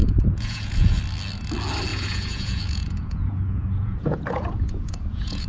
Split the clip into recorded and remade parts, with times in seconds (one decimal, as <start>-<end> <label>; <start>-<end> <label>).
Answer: 0.0-1.0 remade; 1.0-1.9 recorded; 1.9-5.5 remade